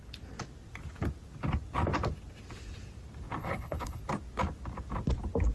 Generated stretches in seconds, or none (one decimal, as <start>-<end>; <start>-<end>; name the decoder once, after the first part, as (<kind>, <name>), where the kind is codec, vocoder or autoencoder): 3.4-4.0 (codec, HILCodec)